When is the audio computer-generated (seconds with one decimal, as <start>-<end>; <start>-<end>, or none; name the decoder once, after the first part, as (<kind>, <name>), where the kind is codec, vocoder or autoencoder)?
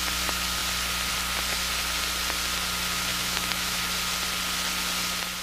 3.1-3.8 (autoencoder, DAC-VAE)